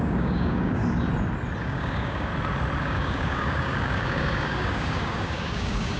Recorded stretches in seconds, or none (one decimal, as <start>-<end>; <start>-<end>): 0.8-1.6; 2.3-2.8